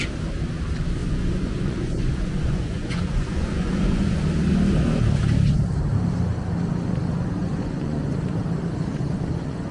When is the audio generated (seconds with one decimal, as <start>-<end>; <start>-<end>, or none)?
1.0-4.2; 7.4-8.1; 8.9-9.7